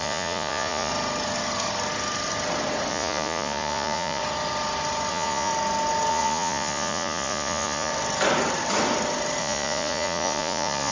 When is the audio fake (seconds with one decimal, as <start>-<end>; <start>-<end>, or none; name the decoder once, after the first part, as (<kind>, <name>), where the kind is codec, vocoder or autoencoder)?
0.0-0.9 (vocoder, Vocos); 2.9-4.2; 5.1-5.5; 6.1-7.9; 9.4-10.9